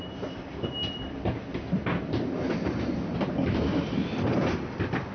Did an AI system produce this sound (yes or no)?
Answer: no